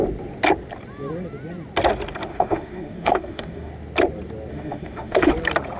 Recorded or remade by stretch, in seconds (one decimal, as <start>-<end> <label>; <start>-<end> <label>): 0.0-2.3 recorded; 2.3-3.7 remade; 3.7-4.5 recorded; 4.5-5.3 remade; 5.3-5.8 recorded